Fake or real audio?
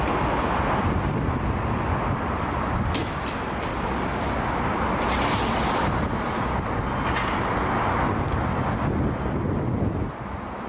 real